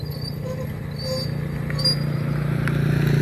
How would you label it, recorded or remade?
recorded